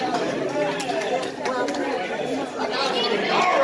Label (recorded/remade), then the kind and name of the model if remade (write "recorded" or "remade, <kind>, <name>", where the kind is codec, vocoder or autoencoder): remade, vocoder, BigVGAN v2